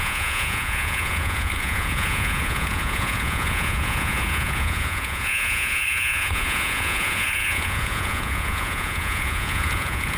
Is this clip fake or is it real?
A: fake